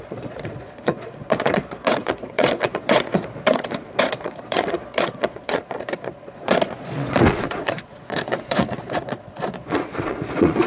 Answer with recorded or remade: remade